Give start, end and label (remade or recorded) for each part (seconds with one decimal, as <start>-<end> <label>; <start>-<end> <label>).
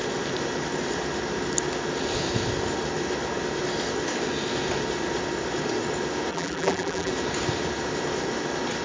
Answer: 0.0-6.3 recorded; 6.3-7.1 remade; 7.1-8.8 recorded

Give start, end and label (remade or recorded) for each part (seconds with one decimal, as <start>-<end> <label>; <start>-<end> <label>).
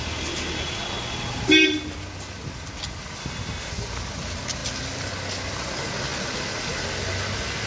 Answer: 0.0-3.2 recorded; 3.2-3.7 remade; 3.7-7.7 recorded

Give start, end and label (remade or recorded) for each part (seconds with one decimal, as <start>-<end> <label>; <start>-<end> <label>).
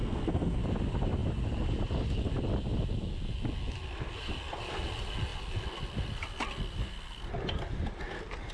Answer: 0.0-0.6 remade; 0.6-8.5 recorded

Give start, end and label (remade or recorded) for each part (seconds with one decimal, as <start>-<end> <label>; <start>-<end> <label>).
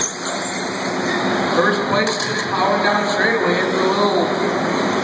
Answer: 0.0-5.0 recorded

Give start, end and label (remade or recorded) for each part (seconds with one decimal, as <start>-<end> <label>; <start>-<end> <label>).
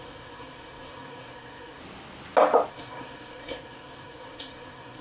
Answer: 0.0-1.8 remade; 1.8-2.7 recorded; 2.7-5.0 remade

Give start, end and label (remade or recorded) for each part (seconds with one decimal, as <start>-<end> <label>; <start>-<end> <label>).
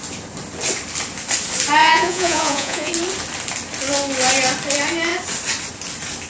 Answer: 0.0-1.8 recorded; 1.8-2.9 remade; 2.9-6.3 recorded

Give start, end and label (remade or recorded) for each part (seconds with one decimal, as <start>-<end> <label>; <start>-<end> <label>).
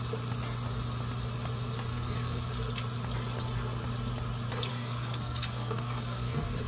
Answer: 0.0-1.9 recorded; 1.9-2.5 remade; 2.5-4.7 recorded; 4.7-6.7 remade